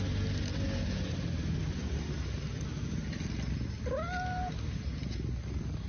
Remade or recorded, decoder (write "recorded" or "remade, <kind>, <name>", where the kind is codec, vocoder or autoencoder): recorded